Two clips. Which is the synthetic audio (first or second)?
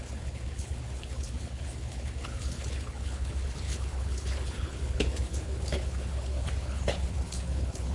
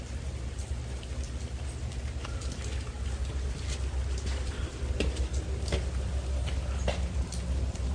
first